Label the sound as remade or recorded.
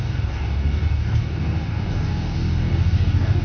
remade